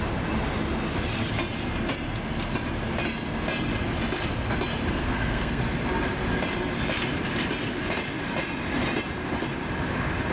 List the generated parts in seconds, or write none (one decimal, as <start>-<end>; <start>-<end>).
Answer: 5.0-5.6